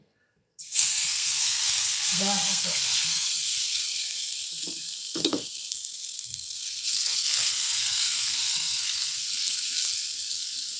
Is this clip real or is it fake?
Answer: fake